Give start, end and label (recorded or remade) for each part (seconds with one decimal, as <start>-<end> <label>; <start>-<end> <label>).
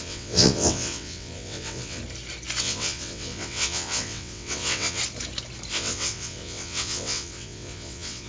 0.0-2.0 remade; 2.0-2.6 recorded; 2.6-5.0 remade; 5.0-5.7 recorded; 5.7-8.3 remade